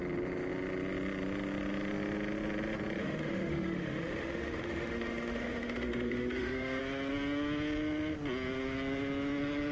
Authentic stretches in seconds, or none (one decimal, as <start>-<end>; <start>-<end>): 0.0-3.0; 6.8-9.7